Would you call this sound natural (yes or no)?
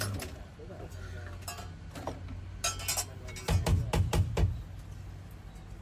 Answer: yes